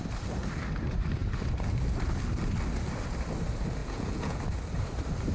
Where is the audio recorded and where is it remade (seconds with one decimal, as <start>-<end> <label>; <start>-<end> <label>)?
0.0-3.8 recorded; 3.8-4.4 remade; 4.4-5.3 recorded